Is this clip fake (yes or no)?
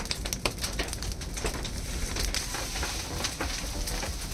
no